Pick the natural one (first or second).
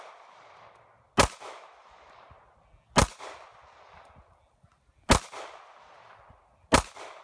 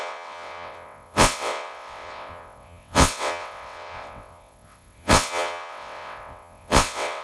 first